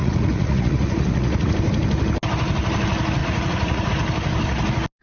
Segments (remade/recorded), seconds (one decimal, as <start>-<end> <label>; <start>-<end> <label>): 0.0-1.5 remade; 1.5-3.2 recorded; 3.2-3.9 remade; 3.9-5.0 recorded